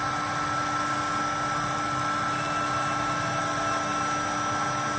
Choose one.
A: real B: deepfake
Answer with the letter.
A